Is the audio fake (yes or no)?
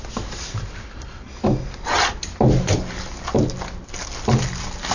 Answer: no